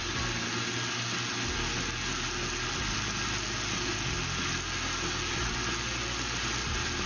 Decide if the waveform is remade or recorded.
recorded